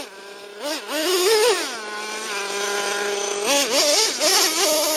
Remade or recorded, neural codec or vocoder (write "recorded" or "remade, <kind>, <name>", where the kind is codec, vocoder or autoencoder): recorded